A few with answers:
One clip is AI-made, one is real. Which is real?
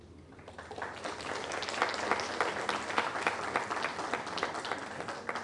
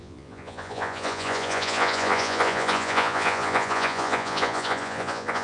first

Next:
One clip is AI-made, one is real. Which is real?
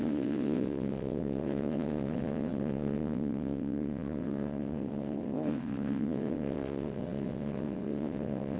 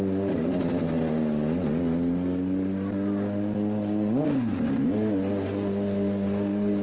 second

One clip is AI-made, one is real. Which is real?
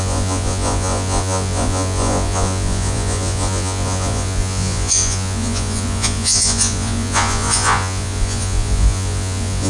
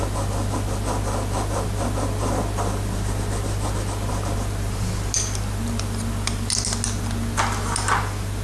second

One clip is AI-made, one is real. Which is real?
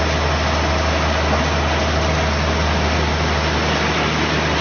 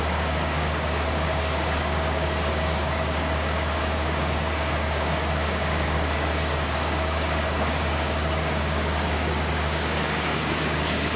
first